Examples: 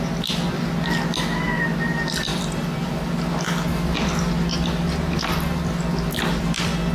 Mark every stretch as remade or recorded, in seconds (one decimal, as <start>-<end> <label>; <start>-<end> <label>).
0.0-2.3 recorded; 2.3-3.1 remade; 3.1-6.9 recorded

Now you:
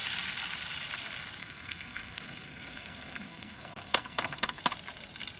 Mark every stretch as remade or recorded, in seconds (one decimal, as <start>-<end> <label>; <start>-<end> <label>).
0.0-1.4 recorded; 1.4-4.6 remade; 4.6-5.4 recorded

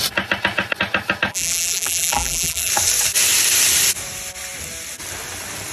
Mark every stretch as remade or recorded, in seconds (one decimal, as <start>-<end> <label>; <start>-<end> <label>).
0.0-1.3 recorded; 1.3-2.7 remade; 2.7-5.7 recorded

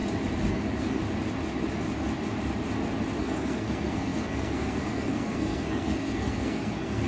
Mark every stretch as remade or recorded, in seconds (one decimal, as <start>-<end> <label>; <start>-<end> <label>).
0.0-0.5 recorded; 0.5-1.0 remade; 1.0-3.2 recorded; 3.2-7.1 remade